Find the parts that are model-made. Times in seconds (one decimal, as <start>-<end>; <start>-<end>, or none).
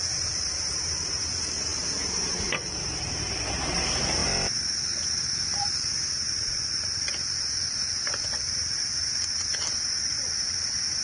0.0-11.0